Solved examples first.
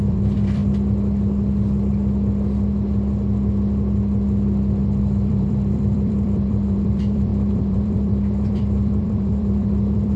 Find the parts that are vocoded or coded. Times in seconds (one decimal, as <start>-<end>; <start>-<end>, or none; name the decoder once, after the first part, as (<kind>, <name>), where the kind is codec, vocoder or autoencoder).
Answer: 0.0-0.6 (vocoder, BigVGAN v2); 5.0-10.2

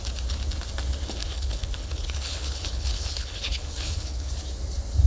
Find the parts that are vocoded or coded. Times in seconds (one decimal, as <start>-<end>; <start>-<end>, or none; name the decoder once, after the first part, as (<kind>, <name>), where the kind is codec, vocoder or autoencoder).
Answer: 1.2-4.3 (codec, HILCodec)

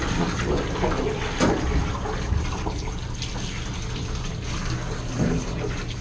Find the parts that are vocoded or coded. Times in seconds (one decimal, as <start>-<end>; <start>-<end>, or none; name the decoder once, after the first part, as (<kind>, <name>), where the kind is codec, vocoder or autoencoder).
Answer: none

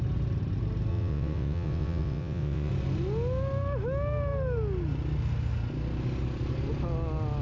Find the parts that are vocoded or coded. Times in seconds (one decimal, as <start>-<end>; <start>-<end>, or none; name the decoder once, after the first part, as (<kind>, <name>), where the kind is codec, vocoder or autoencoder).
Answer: 0.9-2.7 (vocoder, WaveNeXt)